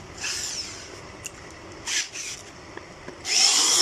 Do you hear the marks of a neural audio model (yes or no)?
no